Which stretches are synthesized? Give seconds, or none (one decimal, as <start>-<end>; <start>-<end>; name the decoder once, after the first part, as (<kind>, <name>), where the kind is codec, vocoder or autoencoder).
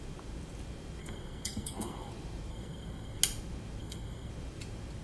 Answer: 1.0-2.1 (codec, SNAC); 2.5-3.2; 3.8-4.3